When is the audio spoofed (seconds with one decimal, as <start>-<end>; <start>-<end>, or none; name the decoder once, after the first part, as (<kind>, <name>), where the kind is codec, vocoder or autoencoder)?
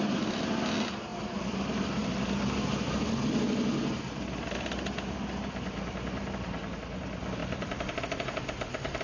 7.4-8.0 (vocoder, BigVGAN v2)